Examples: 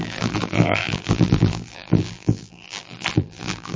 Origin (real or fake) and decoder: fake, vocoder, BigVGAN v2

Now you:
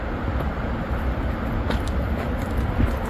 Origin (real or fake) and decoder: real